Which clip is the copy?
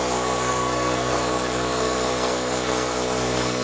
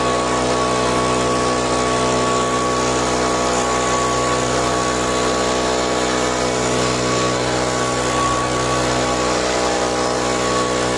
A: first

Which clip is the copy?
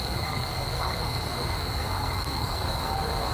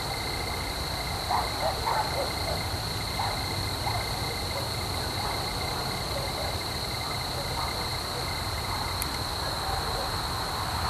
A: first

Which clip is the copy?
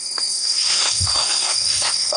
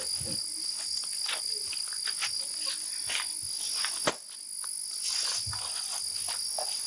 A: first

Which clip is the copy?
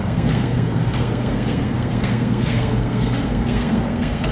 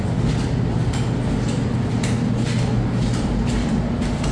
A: first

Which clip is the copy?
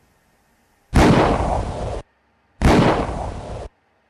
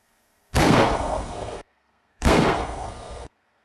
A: second